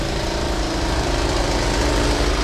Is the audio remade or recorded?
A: recorded